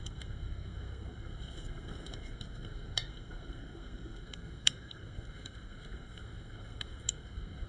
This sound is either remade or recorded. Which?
remade